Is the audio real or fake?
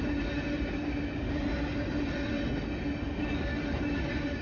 real